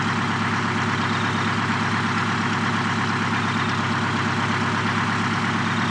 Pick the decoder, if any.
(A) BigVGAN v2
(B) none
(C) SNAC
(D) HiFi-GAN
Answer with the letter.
B